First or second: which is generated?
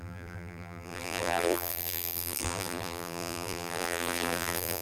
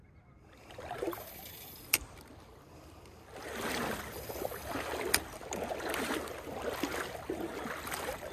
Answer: first